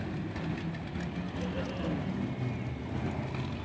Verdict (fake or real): real